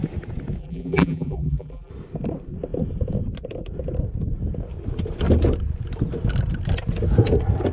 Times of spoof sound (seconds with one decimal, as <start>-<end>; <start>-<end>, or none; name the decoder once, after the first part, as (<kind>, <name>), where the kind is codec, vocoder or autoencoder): 0.6-1.9 (vocoder, BigVGAN v2)